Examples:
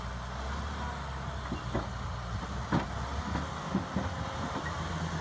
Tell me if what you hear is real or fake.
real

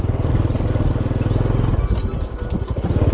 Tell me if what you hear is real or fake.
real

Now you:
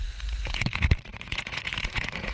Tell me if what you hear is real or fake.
fake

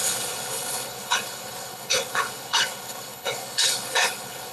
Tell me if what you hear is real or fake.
fake